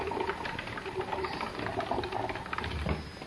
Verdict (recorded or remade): recorded